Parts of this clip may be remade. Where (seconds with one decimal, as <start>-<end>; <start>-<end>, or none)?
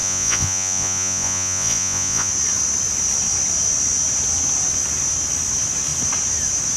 0.0-2.3